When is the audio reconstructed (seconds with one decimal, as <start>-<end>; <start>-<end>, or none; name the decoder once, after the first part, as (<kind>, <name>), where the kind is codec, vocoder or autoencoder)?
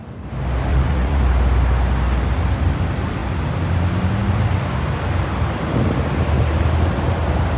0.7-1.2 (vocoder, Vocos)